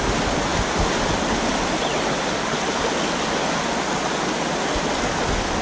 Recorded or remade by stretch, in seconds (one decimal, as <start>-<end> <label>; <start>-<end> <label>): 0.0-5.6 recorded